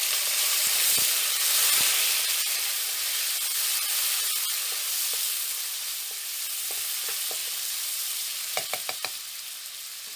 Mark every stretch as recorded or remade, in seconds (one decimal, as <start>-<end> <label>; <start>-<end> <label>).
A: 0.0-3.2 remade; 3.2-7.4 recorded; 7.4-9.2 remade; 9.2-10.2 recorded

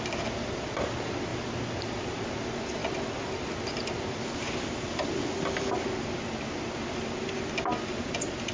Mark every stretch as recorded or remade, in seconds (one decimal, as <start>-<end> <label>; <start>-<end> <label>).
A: 0.0-2.8 recorded; 2.8-4.0 remade; 4.0-8.5 recorded

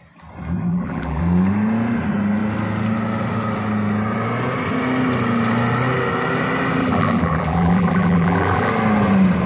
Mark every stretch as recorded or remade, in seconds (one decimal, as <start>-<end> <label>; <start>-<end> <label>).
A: 0.0-0.7 recorded; 0.7-1.2 remade; 1.2-6.8 recorded; 6.8-8.7 remade; 8.7-9.5 recorded

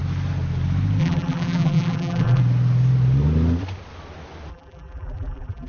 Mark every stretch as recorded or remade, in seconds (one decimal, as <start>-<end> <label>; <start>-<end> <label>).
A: 0.0-1.0 recorded; 1.0-2.4 remade; 2.4-4.5 recorded; 4.5-5.7 remade

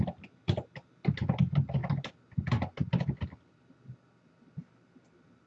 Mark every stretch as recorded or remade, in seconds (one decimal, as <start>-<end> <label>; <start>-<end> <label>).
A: 0.0-1.8 remade; 1.8-3.4 recorded; 3.4-5.5 remade